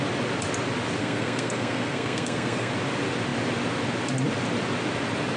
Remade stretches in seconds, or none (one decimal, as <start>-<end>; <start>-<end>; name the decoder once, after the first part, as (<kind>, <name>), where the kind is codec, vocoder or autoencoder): 1.0-2.7 (codec, SNAC)

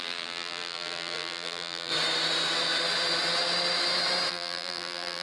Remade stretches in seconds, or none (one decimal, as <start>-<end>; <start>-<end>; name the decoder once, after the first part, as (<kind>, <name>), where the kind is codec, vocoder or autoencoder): 0.0-1.9 (vocoder, BigVGAN v2); 4.3-5.2

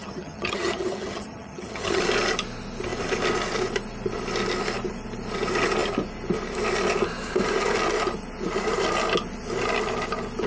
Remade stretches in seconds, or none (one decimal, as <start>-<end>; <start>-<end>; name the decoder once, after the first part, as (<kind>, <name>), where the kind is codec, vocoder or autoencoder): 0.0-2.0 (vocoder, HiFi-GAN)

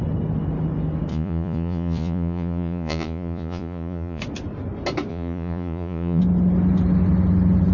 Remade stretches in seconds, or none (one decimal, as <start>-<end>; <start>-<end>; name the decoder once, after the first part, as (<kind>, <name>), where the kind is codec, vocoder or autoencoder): 1.1-4.2 (vocoder, Vocos); 5.1-6.2

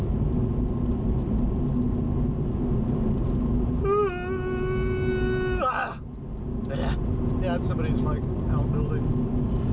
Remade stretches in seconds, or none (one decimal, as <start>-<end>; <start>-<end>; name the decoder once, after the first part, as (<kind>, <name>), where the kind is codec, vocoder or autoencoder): none

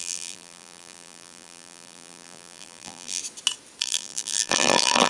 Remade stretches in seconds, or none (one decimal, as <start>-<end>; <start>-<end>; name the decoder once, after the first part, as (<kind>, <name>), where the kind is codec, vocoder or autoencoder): 0.0-3.2 (vocoder, BigVGAN v2); 3.8-5.1

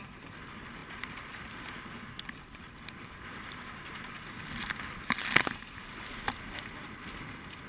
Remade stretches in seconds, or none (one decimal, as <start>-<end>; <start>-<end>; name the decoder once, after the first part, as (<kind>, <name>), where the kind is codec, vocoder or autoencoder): none

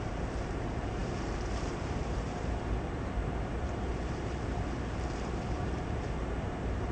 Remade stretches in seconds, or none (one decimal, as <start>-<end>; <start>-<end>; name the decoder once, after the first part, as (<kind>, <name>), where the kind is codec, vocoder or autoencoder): 0.0-6.9 (vocoder, BigVGAN v2)